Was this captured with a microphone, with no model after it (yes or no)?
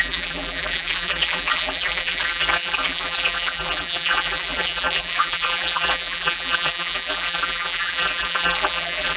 no